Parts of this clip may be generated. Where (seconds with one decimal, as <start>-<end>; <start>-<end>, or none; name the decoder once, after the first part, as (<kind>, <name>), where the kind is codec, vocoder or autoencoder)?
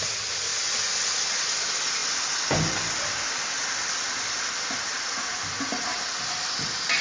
none